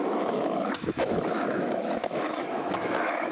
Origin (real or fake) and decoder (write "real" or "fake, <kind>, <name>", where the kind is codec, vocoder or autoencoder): fake, autoencoder, DAC-VAE